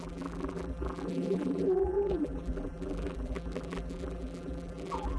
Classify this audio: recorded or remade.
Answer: remade